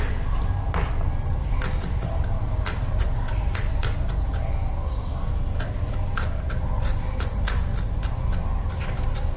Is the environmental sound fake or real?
real